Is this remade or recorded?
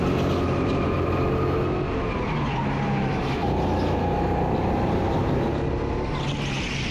recorded